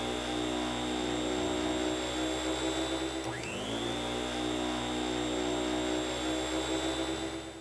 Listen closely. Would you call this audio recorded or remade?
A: recorded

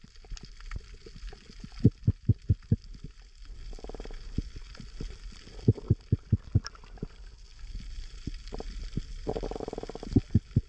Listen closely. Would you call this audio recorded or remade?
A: recorded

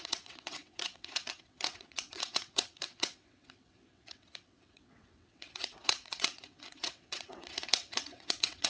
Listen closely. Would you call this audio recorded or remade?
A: remade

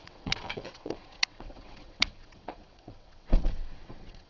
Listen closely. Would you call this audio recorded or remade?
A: remade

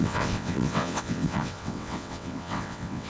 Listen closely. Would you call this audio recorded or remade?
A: remade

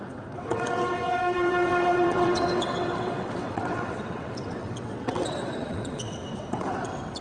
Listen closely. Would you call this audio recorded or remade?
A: remade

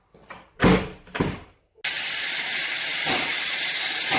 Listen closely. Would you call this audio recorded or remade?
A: recorded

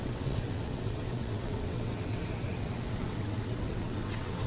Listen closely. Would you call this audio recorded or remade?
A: remade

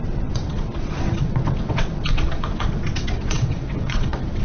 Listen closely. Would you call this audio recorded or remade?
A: remade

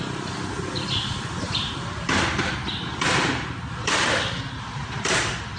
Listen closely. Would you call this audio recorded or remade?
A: recorded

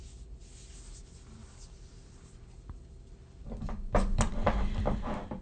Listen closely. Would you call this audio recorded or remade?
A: recorded